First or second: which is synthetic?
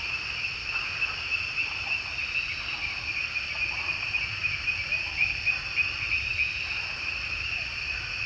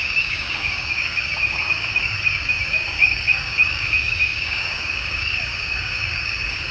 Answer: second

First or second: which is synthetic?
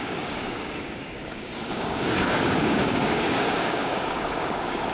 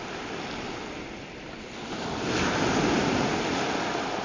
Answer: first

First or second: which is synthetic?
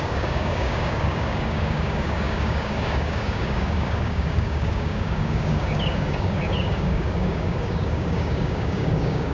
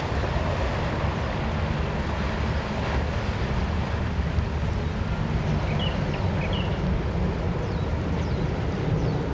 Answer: first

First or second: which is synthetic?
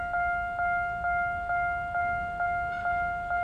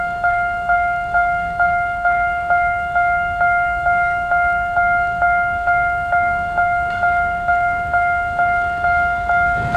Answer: second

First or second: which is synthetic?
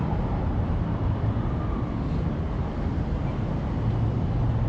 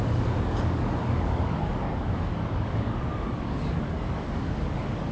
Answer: second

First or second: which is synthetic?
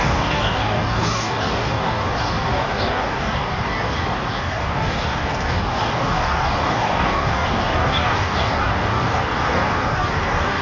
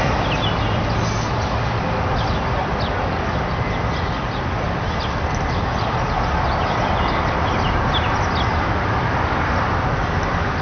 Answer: first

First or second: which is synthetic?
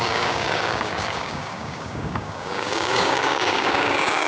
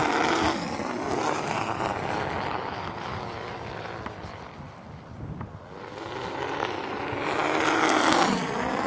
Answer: first